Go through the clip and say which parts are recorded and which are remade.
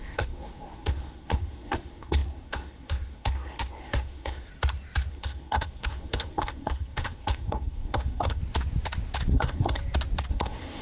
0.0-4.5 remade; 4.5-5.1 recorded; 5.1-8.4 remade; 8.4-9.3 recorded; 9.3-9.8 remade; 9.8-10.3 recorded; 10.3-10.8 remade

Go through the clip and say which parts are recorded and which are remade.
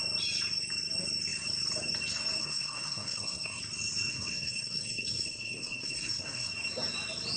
0.0-2.4 recorded; 2.4-3.6 remade; 3.6-4.1 recorded; 4.1-6.5 remade; 6.5-7.4 recorded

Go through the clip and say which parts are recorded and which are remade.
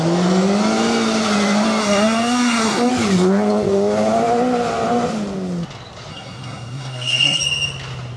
0.0-1.8 recorded; 1.8-2.9 remade; 2.9-6.1 recorded; 6.1-7.4 remade; 7.4-8.2 recorded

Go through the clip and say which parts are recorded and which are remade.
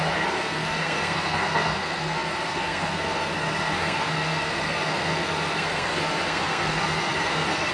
0.0-7.7 remade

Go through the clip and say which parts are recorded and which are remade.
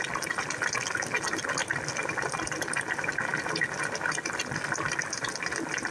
0.0-5.9 recorded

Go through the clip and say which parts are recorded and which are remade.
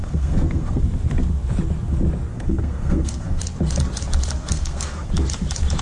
0.0-0.8 remade; 0.8-2.3 recorded; 2.3-3.4 remade; 3.4-4.4 recorded; 4.4-5.1 remade; 5.1-5.8 recorded